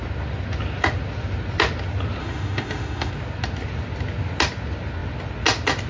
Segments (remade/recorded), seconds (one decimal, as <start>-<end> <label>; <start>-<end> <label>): 0.0-2.2 recorded; 2.2-3.1 remade; 3.1-5.9 recorded